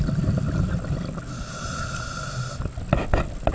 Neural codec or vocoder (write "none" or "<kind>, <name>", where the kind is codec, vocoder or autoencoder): none